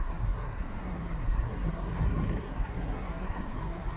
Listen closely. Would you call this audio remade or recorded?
remade